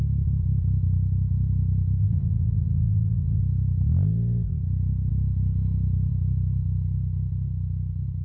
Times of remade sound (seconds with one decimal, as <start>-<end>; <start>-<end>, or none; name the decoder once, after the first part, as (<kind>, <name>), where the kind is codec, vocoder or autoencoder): 2.0-3.4 (vocoder, BigVGAN v2)